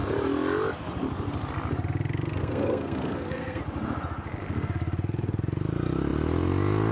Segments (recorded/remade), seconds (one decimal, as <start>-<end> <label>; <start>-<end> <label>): 0.0-2.4 recorded; 2.4-3.6 remade; 3.6-6.9 recorded